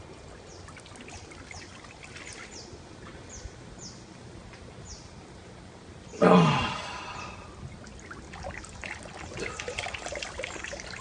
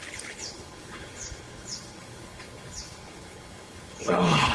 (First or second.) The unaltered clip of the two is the first